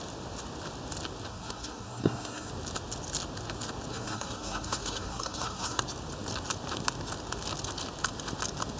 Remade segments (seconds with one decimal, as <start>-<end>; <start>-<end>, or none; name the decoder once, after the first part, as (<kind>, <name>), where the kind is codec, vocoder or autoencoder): 1.3-2.5 (codec, SNAC); 3.9-5.8